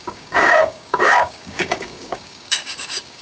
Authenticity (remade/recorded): remade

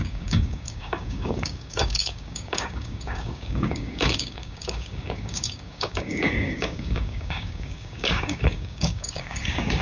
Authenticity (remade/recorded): remade